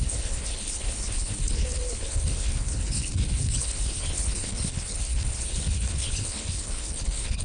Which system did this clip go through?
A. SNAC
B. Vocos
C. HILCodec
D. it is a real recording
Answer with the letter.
C